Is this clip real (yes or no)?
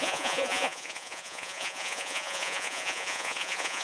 no